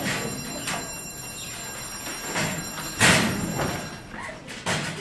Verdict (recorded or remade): recorded